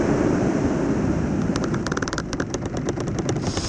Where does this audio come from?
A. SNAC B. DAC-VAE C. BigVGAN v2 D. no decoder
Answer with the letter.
C